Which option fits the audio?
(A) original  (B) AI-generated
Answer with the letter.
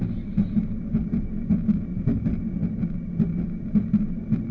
A